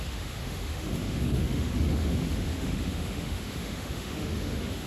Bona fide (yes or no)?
no